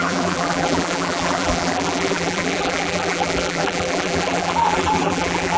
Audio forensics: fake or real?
fake